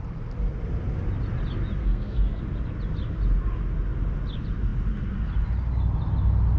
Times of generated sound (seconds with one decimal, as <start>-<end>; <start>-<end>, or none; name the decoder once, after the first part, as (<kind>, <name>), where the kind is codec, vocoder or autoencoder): 1.8-2.4 (codec, SNAC)